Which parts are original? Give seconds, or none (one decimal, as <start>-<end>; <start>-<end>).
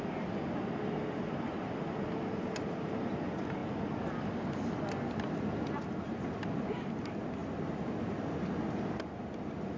0.0-9.8